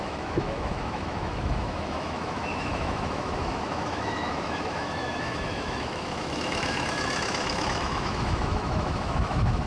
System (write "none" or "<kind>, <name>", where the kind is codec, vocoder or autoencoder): autoencoder, DAC-VAE